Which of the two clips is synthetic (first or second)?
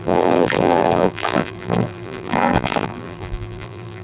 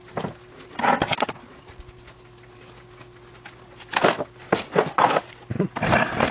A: first